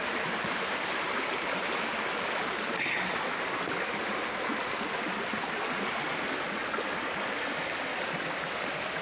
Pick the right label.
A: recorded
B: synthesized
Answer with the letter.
A